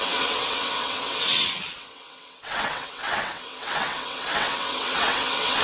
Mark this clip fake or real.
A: fake